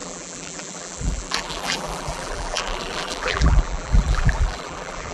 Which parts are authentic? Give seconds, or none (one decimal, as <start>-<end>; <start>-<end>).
none